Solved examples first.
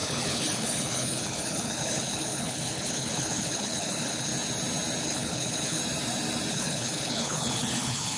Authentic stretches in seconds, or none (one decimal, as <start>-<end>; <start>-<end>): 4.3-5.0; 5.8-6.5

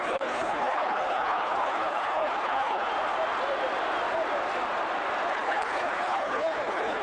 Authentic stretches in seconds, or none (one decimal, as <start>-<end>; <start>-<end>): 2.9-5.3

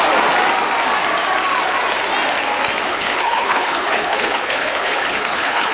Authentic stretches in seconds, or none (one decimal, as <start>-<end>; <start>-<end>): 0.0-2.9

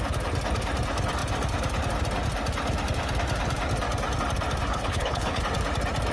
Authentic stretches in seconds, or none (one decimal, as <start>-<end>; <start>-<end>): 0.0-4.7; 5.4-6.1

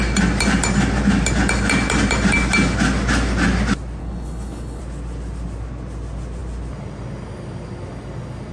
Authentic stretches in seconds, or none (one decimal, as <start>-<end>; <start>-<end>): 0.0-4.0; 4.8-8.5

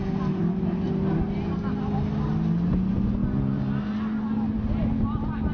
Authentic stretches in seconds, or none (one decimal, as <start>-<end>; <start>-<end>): 0.0-5.5

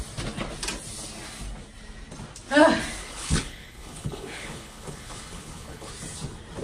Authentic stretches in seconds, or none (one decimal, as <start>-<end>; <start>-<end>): 0.0-3.0; 5.9-6.6

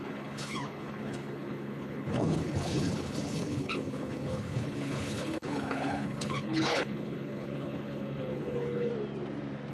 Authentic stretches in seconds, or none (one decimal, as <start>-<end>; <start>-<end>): 8.9-9.7